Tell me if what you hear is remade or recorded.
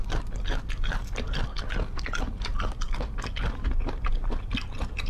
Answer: recorded